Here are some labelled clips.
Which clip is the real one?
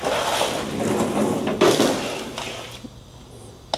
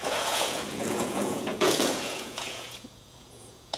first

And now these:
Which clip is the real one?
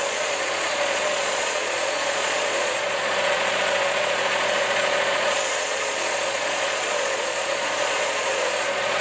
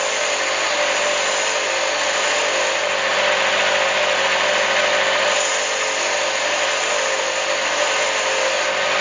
second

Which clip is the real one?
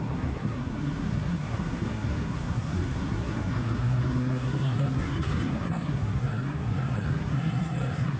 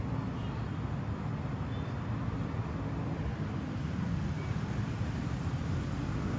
second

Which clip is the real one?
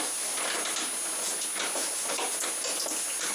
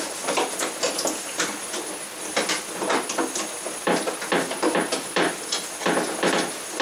first